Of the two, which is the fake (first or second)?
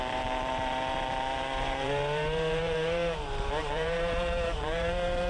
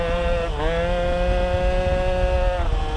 first